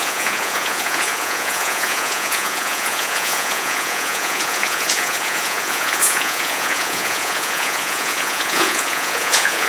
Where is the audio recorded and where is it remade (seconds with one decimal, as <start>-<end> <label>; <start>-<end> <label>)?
0.0-9.7 remade

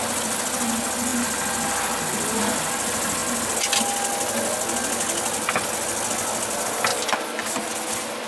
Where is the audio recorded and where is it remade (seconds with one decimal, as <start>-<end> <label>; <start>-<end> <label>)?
0.0-8.3 recorded

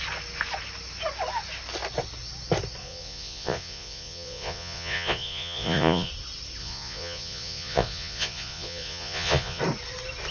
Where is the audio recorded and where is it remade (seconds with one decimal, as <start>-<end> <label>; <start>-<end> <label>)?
0.0-2.8 recorded; 2.8-6.1 remade; 6.1-6.6 recorded; 6.6-9.6 remade; 9.6-10.3 recorded

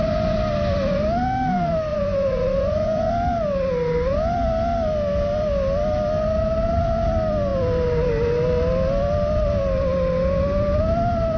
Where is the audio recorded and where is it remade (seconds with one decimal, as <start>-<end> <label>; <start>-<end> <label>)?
0.0-1.9 recorded; 1.9-3.1 remade; 3.1-11.4 recorded